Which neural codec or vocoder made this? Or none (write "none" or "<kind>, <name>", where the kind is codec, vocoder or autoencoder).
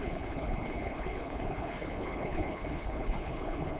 codec, HILCodec